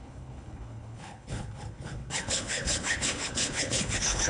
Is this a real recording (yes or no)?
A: no